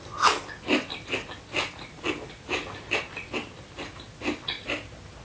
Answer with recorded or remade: recorded